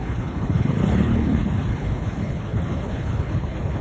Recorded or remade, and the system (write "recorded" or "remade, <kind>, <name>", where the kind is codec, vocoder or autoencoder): remade, codec, HILCodec